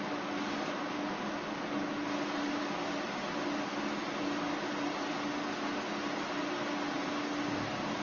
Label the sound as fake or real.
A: real